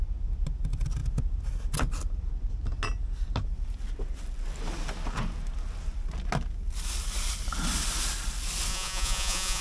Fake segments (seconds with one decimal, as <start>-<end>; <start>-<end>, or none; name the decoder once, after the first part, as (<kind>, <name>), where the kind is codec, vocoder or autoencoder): 8.7-9.6 (vocoder, Vocos)